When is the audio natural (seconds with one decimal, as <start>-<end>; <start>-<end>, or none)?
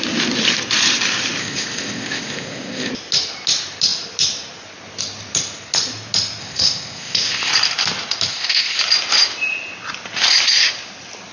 0.0-1.4; 2.9-6.4; 7.5-8.3; 8.8-11.3